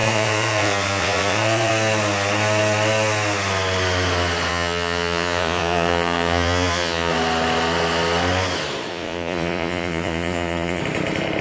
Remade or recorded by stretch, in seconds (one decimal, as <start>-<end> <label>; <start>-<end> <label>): 0.0-1.7 remade; 1.7-4.5 recorded; 4.5-7.1 remade; 7.1-8.9 recorded; 8.9-10.8 remade; 10.8-11.4 recorded